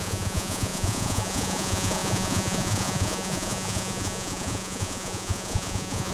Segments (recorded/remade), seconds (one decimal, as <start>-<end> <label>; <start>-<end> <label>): 0.0-6.1 remade